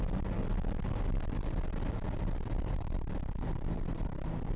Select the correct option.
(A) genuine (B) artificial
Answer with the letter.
A